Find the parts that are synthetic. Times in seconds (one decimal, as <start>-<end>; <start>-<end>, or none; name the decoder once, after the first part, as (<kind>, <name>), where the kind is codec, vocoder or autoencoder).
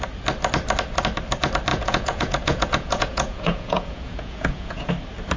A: 1.7-4.9 (vocoder, Vocos)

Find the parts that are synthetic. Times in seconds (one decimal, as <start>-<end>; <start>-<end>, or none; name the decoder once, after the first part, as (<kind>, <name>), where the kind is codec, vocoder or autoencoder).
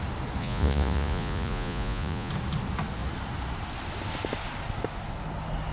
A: 0.4-2.3 (vocoder, Vocos)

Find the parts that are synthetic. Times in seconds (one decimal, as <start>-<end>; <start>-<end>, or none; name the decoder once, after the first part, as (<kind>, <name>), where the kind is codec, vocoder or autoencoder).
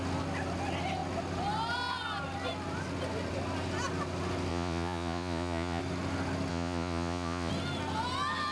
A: 4.5-5.8 (vocoder, Vocos); 6.5-7.5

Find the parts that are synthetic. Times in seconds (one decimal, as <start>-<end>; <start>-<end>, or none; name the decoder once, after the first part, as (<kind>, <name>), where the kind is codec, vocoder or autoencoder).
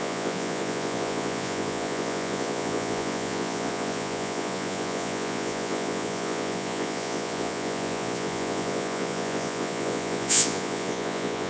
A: 0.0-11.5 (vocoder, Vocos)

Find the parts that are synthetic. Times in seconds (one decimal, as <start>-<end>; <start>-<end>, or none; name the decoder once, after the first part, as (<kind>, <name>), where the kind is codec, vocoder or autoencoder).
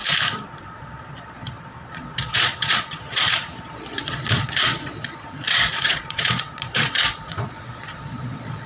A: 0.6-8.7 (vocoder, Vocos)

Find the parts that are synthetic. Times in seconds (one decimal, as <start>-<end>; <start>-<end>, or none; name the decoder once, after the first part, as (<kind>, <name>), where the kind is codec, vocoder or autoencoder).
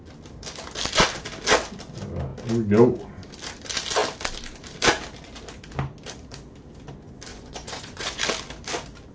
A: 7.3-8.2 (vocoder, Vocos)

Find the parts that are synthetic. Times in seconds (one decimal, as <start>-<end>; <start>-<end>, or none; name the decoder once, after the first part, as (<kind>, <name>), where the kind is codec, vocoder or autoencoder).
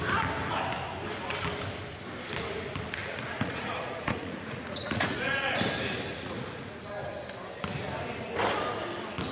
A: 3.0-5.6 (vocoder, Vocos); 6.1-6.9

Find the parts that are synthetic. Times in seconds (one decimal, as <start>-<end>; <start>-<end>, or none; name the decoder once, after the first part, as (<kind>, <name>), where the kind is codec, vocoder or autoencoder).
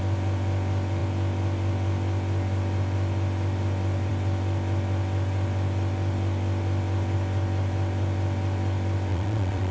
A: 9.1-9.7 (vocoder, Vocos)